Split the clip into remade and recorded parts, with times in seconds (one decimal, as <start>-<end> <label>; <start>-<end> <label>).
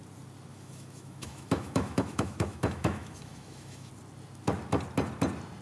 0.0-0.5 recorded; 0.5-3.9 remade; 3.9-5.6 recorded